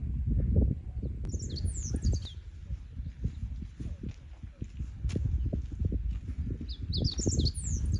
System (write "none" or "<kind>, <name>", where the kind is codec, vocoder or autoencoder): none